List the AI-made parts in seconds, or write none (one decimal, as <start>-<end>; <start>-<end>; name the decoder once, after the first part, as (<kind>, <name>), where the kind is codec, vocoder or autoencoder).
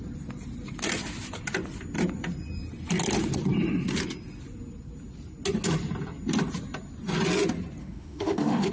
7.8-8.7 (autoencoder, DAC-VAE)